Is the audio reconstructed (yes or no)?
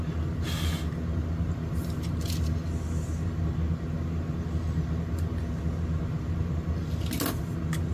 no